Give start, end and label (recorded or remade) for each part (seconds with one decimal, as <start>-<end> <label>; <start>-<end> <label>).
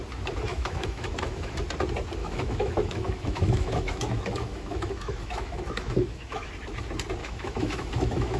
0.0-0.5 recorded; 0.5-1.5 remade; 1.5-2.2 recorded; 2.2-6.5 remade; 6.5-7.2 recorded; 7.2-8.4 remade